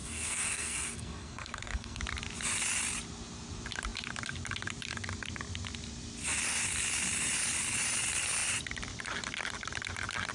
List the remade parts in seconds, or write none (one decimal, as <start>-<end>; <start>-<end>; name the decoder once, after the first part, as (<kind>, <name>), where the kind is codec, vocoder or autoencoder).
0.0-2.0 (codec, SNAC)